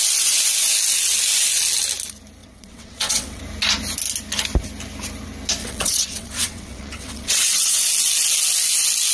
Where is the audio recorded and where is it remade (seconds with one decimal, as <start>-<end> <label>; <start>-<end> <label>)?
0.0-2.4 recorded; 2.4-3.4 remade; 3.4-5.6 recorded; 5.6-7.9 remade; 7.9-9.1 recorded